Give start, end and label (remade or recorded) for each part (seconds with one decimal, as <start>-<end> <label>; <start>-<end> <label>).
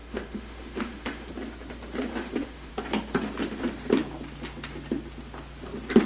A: 0.0-1.3 remade; 1.3-2.1 recorded; 2.1-2.7 remade; 2.7-6.0 recorded